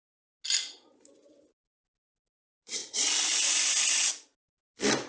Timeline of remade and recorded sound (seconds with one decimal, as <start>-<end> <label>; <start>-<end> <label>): 0.0-5.1 recorded